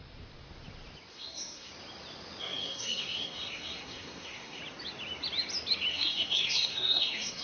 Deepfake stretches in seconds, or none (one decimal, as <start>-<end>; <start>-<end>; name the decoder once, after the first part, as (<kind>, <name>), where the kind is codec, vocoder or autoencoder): 1.1-1.7 (codec, SNAC); 2.4-4.6; 5.9-7.4